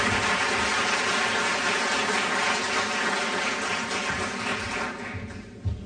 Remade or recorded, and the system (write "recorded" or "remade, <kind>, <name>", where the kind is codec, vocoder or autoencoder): recorded